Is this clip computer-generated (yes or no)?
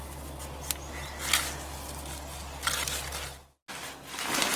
no